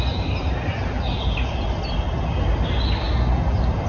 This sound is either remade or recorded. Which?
recorded